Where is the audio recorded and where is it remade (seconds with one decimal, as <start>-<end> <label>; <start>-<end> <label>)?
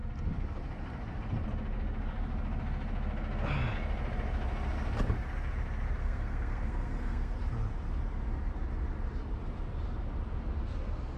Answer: 0.0-6.0 recorded; 6.0-7.3 remade; 7.3-11.2 recorded